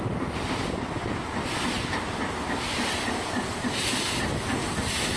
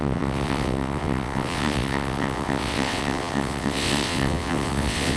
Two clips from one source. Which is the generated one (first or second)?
second